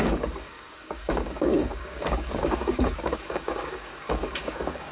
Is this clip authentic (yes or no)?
no